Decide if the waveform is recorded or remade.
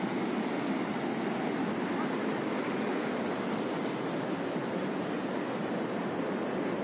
recorded